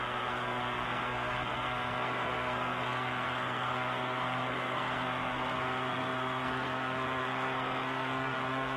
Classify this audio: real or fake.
fake